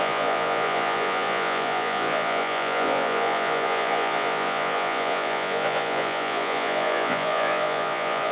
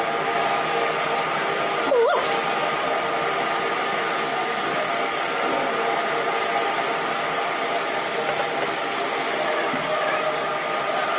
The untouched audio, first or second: second